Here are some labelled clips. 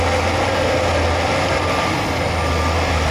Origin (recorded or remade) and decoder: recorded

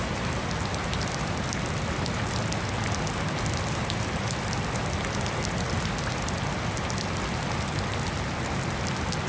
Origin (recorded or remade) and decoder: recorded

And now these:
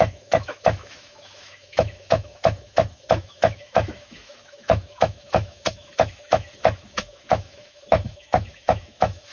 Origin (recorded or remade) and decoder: remade, autoencoder, DAC-VAE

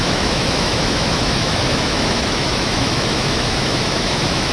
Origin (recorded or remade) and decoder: remade, autoencoder, DAC-VAE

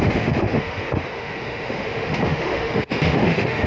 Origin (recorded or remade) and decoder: remade, autoencoder, DAC-VAE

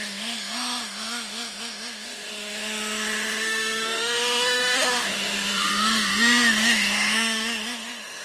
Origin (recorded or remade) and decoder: remade, autoencoder, DAC-VAE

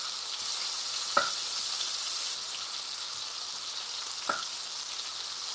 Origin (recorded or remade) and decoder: recorded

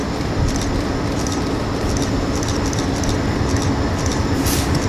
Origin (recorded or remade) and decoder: recorded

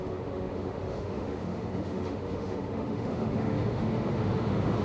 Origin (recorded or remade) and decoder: remade, autoencoder, DAC-VAE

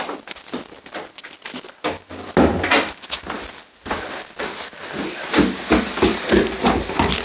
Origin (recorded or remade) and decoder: recorded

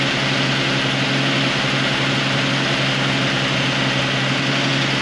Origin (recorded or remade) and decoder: recorded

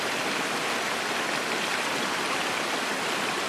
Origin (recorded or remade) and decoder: recorded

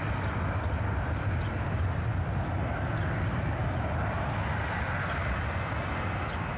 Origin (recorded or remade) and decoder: recorded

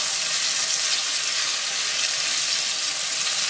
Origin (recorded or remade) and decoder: recorded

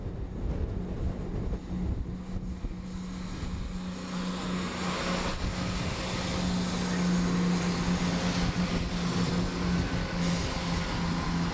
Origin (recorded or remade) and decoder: recorded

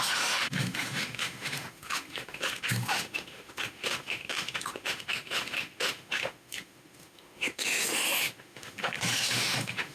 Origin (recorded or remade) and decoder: remade, autoencoder, DAC-VAE